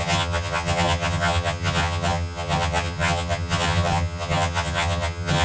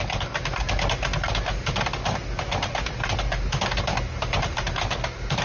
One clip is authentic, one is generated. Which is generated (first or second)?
first